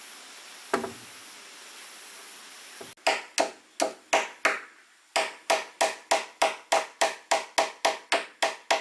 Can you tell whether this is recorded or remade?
recorded